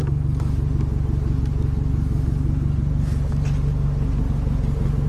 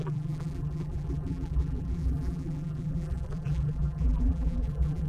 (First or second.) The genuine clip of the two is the first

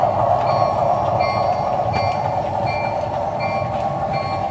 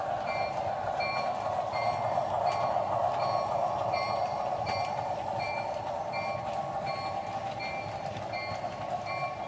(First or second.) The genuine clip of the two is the first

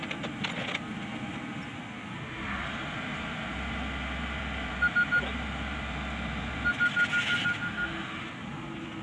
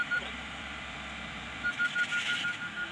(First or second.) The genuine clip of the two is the first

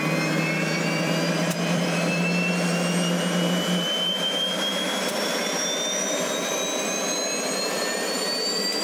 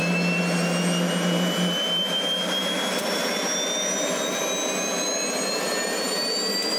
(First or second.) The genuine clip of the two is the second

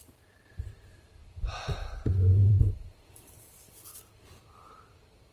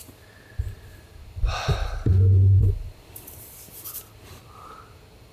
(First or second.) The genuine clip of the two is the second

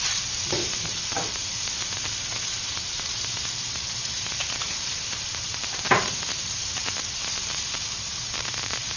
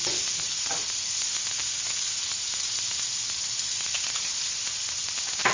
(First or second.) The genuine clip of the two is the second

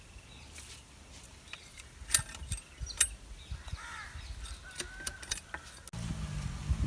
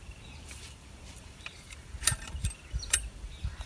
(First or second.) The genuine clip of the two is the first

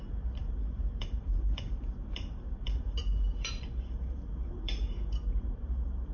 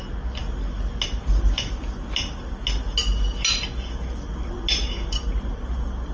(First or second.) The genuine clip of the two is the second